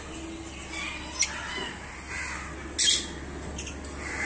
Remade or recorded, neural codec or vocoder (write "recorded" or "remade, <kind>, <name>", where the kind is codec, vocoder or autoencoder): recorded